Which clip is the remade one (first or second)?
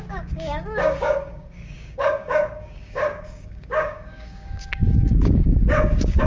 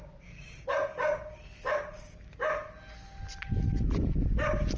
first